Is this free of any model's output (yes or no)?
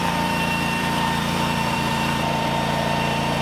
no